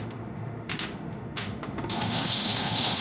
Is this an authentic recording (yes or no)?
no